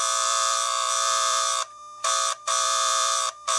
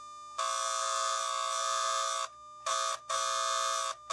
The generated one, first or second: first